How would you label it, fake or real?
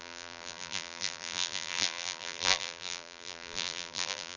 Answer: fake